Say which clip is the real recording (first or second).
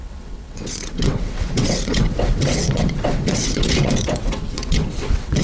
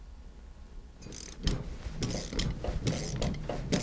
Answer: second